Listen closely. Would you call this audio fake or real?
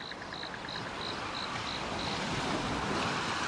real